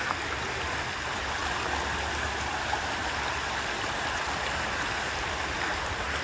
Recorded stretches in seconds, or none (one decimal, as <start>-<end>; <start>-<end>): 0.0-6.2